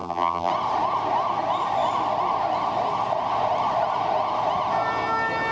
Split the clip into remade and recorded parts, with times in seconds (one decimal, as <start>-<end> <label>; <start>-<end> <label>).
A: 0.0-0.5 remade; 0.5-5.5 recorded